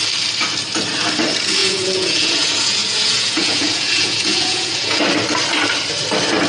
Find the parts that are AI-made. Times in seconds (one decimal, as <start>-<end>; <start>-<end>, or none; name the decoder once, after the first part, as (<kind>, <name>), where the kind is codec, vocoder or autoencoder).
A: 1.6-5.0 (vocoder, Vocos)